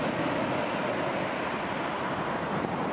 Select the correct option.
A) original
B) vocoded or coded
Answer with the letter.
A